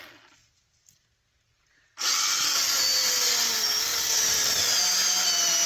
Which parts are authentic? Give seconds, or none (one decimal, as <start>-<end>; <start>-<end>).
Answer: 0.0-5.7